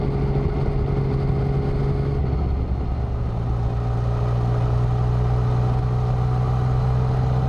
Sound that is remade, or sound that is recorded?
recorded